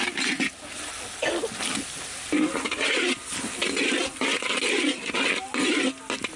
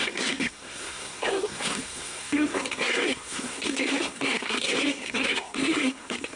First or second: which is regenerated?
second